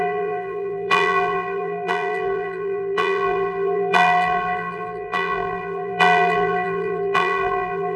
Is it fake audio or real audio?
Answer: fake